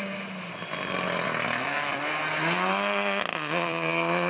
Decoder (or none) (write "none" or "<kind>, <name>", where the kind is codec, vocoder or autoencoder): none